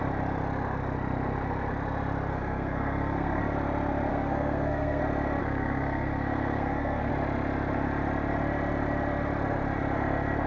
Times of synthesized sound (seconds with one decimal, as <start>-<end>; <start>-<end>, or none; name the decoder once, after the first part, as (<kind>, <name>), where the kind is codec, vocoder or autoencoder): 2.3-3.4 (codec, SNAC); 4.1-5.0; 5.4-7.1